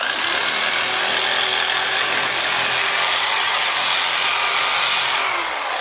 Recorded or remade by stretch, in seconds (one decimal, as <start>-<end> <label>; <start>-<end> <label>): 0.0-3.2 recorded; 3.2-3.7 remade; 3.7-5.8 recorded